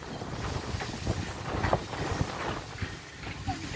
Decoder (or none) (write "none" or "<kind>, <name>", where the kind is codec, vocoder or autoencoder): none